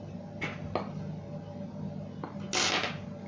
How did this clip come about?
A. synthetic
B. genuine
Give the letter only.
B